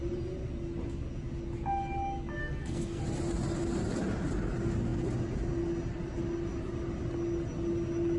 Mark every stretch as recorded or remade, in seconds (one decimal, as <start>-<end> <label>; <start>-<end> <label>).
0.0-2.4 recorded; 2.4-3.0 remade; 3.0-8.2 recorded